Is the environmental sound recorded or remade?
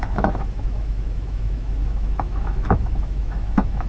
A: remade